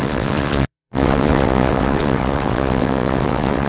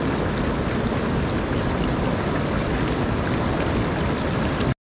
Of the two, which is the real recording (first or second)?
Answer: second